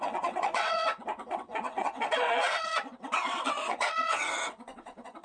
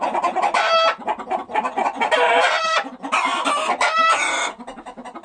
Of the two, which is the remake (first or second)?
first